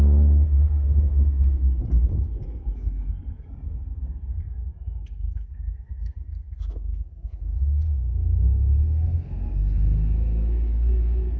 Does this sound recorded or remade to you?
remade